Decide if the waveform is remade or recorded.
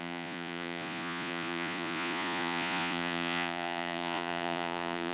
remade